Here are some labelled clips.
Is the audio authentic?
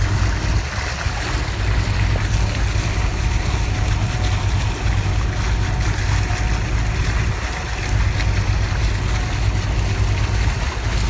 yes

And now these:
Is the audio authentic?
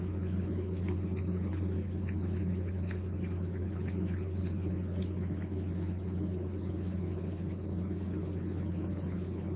no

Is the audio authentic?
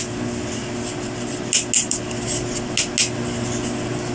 yes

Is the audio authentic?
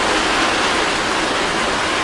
yes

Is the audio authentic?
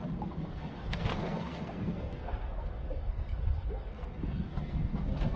no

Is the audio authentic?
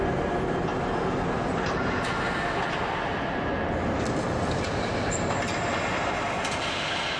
yes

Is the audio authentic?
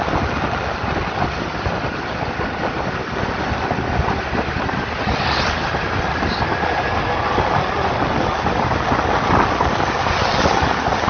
yes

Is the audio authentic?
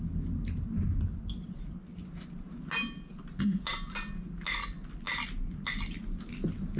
yes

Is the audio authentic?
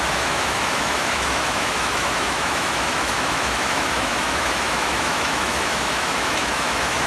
no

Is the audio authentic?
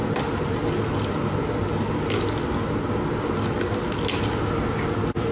yes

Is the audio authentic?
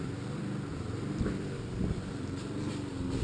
no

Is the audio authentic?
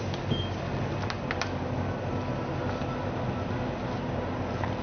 yes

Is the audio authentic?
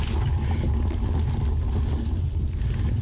yes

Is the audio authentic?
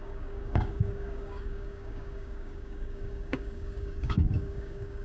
no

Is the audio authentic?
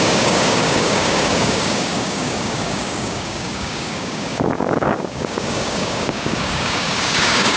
no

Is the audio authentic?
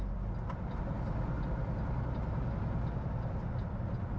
yes